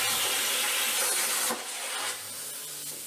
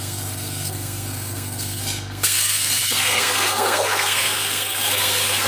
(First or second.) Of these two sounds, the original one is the first